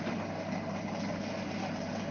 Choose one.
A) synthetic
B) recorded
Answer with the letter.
B